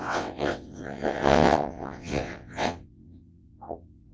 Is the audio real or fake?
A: fake